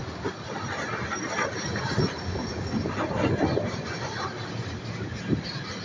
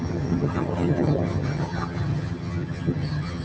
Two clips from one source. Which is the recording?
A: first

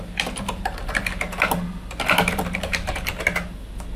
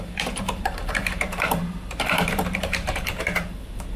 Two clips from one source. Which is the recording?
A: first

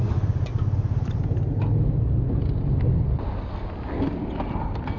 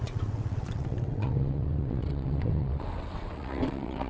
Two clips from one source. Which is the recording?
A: first